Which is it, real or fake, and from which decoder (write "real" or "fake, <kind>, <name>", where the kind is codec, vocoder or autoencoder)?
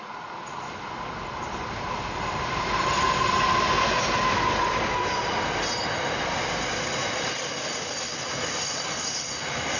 real